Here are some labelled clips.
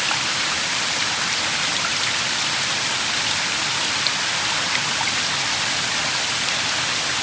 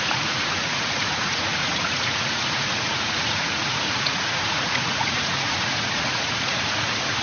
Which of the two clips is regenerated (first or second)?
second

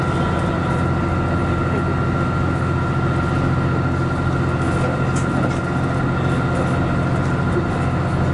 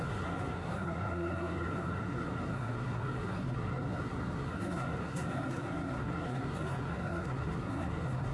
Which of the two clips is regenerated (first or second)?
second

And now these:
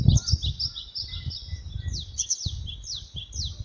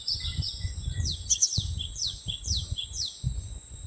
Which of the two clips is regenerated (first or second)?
second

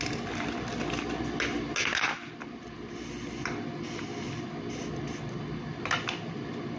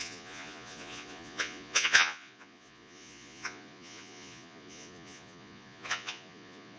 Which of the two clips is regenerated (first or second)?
second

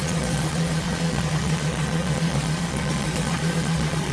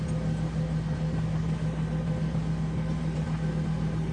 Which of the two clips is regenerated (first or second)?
first